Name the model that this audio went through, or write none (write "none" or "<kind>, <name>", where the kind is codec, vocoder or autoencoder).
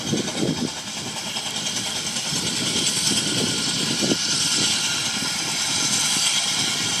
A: none